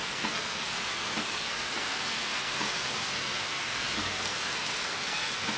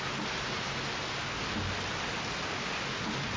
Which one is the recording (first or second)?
second